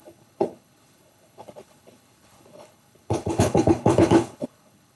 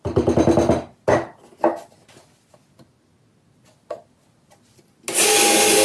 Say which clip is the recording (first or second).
second